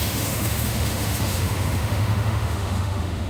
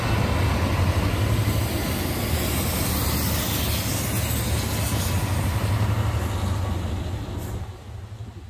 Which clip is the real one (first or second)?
second